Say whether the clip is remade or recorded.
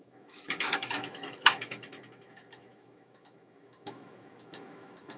remade